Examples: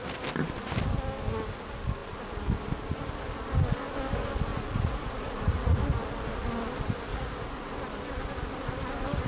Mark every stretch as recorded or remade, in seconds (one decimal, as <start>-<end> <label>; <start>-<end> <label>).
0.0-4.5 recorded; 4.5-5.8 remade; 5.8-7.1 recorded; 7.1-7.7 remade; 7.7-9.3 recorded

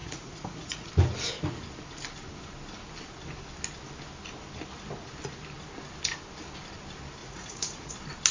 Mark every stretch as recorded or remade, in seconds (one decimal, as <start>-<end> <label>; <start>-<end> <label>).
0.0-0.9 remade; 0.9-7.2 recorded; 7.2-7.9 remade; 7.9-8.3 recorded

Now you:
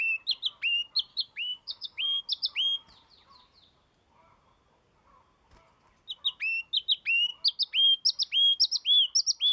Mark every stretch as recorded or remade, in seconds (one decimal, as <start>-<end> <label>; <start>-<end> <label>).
0.0-1.1 recorded; 1.1-2.2 remade; 2.2-9.5 recorded